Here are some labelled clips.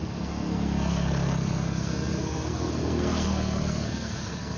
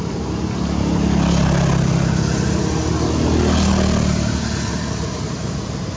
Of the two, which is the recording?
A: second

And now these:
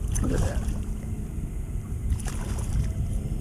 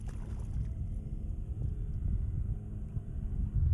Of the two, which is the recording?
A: second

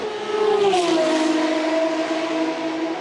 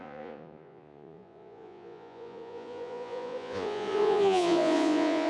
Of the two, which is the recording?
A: first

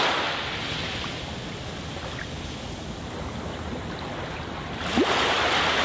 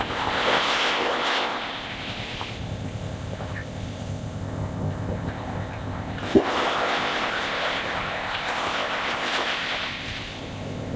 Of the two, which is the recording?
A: first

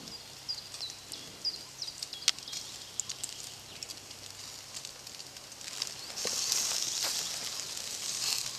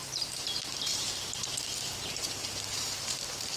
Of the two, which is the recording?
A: first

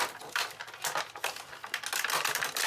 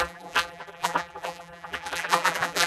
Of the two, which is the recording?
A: first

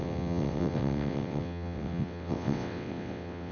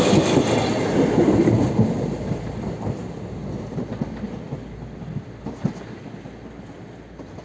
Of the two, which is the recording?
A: second